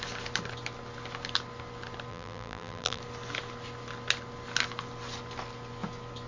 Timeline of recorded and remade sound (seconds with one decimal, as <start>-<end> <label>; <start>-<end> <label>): 0.0-2.1 recorded; 2.1-3.0 remade; 3.0-6.3 recorded